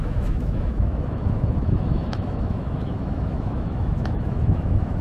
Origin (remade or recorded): remade